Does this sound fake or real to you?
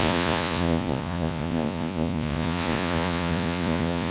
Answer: fake